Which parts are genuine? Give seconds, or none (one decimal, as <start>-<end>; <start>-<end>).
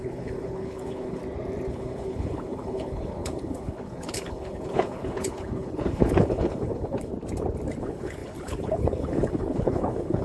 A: 1.2-1.7; 7.1-7.8